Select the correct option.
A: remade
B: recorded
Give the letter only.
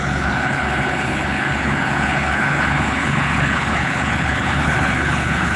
A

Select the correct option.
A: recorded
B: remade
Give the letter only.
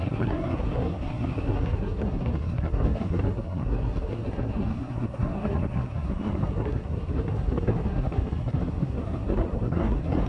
B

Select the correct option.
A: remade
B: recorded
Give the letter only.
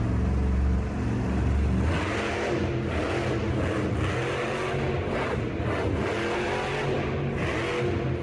B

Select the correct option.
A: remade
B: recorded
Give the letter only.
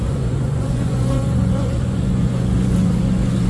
A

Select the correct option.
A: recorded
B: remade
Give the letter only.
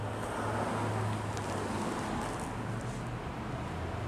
A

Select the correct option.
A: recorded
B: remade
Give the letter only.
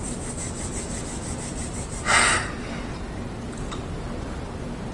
A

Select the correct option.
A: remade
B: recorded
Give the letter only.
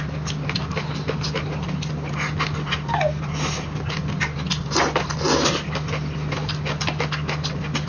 B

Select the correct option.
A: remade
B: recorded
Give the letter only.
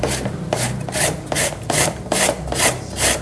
A